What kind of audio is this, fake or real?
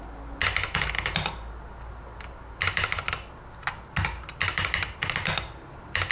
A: real